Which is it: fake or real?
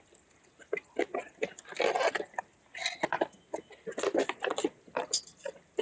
real